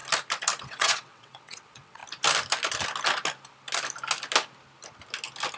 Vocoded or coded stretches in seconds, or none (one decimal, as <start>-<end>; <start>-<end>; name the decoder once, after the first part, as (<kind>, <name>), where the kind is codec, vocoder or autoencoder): 0.6-2.0 (vocoder, WaveNeXt)